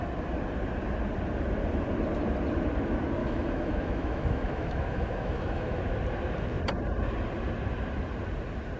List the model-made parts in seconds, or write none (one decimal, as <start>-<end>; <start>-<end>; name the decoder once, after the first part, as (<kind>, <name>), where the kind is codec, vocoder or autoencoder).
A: 3.2-5.8 (autoencoder, DAC-VAE)